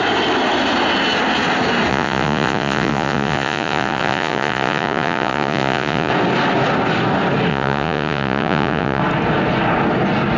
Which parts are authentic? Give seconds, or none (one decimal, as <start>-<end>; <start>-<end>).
0.0-1.9; 6.1-7.5; 9.0-10.4